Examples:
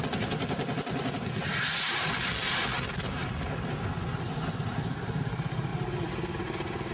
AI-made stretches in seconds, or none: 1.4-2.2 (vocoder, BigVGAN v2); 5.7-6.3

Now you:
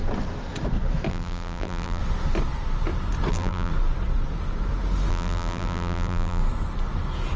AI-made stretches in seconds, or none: 1.1-2.0 (vocoder, BigVGAN v2); 3.3-3.7; 5.1-6.4

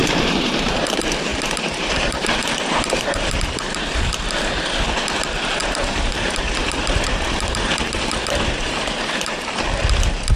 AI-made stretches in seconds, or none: 0.0-0.8 (vocoder, BigVGAN v2); 1.3-4.0; 5.6-9.6

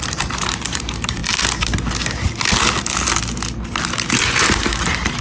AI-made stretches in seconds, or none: 0.0-1.2 (vocoder, BigVGAN v2); 4.1-5.2

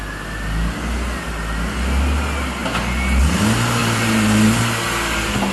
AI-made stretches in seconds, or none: 3.8-4.6 (vocoder, BigVGAN v2)

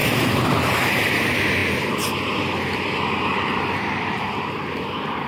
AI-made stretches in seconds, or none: 0.0-5.3 (vocoder, BigVGAN v2)

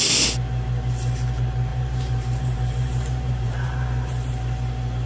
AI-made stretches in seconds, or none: 1.7-4.3 (vocoder, BigVGAN v2)